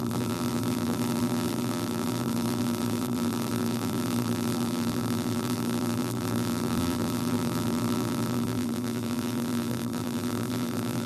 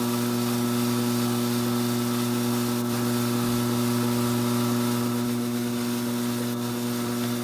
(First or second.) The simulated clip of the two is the first